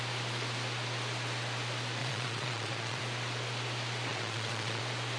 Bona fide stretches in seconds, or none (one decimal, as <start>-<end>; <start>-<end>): 0.0-2.0; 3.0-4.1; 4.8-5.2